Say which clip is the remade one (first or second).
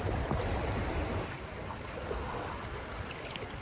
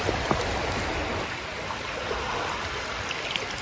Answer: first